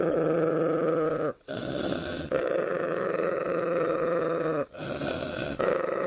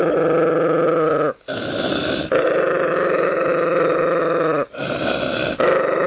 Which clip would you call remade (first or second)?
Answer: first